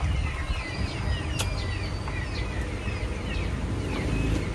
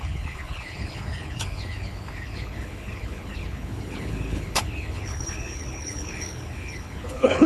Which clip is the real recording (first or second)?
first